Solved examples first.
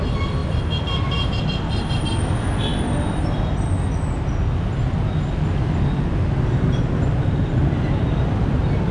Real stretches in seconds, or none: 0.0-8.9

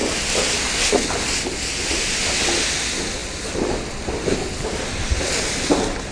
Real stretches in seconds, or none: 0.0-6.1